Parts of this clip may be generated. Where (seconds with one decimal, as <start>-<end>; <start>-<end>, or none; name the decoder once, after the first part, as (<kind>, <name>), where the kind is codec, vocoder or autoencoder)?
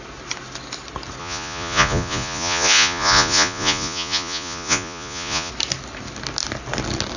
1.2-5.5 (vocoder, Vocos)